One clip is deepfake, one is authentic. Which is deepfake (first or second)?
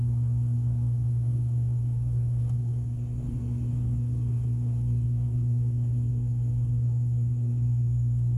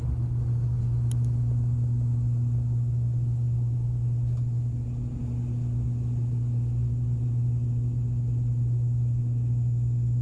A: first